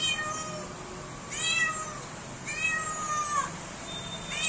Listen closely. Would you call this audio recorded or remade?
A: recorded